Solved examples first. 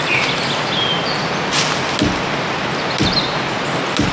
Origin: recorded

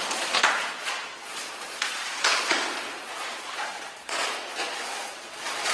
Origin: remade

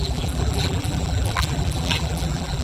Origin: remade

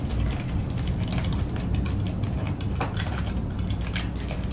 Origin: recorded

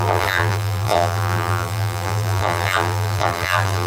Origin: remade